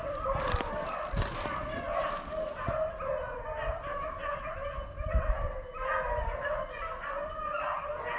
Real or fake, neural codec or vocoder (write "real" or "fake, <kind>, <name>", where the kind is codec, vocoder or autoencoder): real